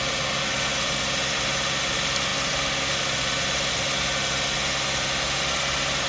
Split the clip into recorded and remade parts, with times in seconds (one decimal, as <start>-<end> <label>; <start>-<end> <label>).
0.0-6.1 recorded